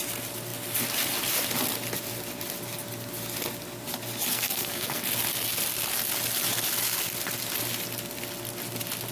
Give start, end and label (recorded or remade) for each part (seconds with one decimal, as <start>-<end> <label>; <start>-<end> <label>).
0.0-4.3 recorded; 4.3-5.0 remade; 5.0-9.1 recorded